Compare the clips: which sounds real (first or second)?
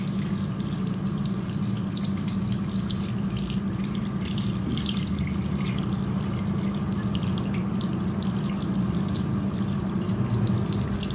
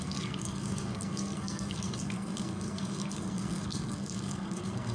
first